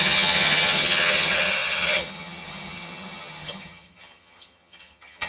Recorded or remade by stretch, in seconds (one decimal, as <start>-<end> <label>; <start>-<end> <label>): 0.0-5.3 remade